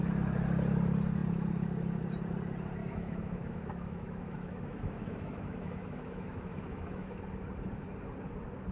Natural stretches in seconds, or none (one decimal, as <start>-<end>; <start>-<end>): 0.0-2.8; 7.2-8.7